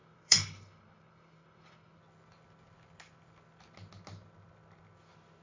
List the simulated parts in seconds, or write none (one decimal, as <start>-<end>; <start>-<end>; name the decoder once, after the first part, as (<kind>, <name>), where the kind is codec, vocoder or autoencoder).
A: 0.0-2.0 (codec, HILCodec)